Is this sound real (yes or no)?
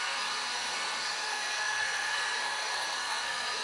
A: no